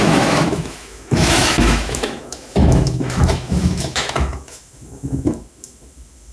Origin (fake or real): fake